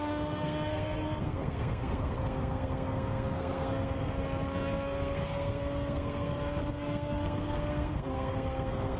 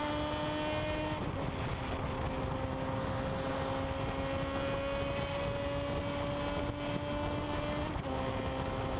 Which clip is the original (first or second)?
second